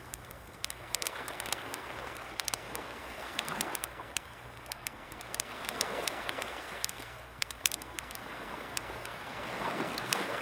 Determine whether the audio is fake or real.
fake